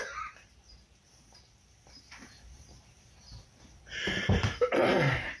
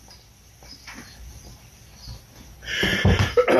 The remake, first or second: first